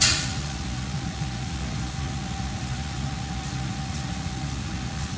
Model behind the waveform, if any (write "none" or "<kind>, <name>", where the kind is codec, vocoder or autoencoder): vocoder, Vocos